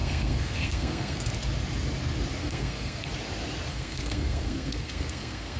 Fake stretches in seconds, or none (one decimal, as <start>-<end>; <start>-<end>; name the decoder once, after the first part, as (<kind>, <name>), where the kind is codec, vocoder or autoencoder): 0.0-1.3 (codec, SNAC); 2.4-3.1; 3.7-5.6